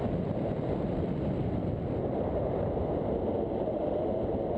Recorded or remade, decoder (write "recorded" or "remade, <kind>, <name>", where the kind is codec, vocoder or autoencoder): recorded